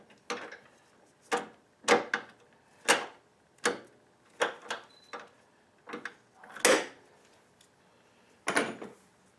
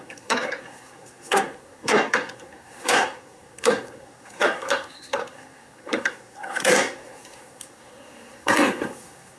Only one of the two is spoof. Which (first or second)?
second